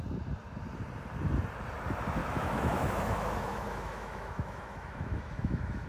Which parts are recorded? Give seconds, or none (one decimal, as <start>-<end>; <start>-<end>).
0.0-2.2